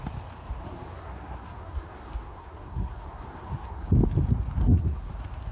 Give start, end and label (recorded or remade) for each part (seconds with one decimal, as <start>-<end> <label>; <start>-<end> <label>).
0.0-0.6 recorded; 0.6-3.9 remade; 3.9-4.6 recorded; 4.6-5.1 remade; 5.1-5.5 recorded